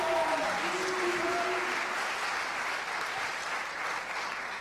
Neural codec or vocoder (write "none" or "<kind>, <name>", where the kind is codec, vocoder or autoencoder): none